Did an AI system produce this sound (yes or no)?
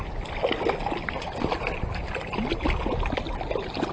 no